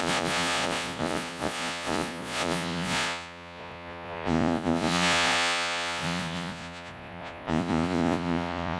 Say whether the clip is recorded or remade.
remade